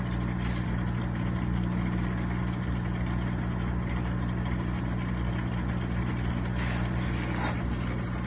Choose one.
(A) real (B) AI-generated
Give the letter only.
A